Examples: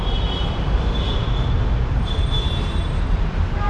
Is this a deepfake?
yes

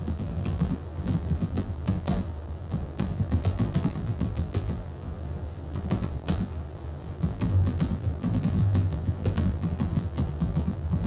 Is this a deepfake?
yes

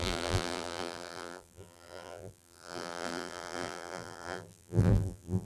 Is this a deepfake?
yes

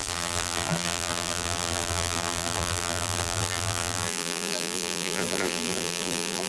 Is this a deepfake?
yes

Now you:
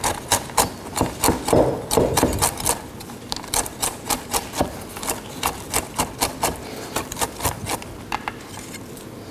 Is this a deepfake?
no